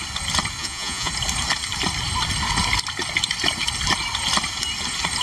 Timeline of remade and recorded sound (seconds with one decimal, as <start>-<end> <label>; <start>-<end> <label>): 0.0-0.6 recorded; 0.6-1.1 remade; 1.1-5.2 recorded